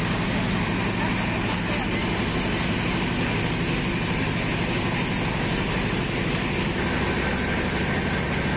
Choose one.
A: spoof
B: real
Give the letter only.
B